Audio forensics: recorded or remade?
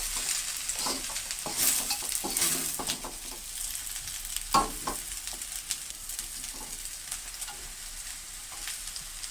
recorded